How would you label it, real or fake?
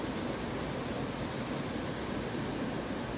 real